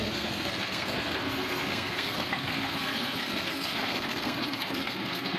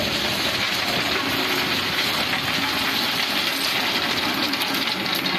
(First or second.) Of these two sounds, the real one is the second